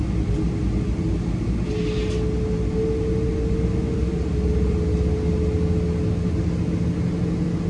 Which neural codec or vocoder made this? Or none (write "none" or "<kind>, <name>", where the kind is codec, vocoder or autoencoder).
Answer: none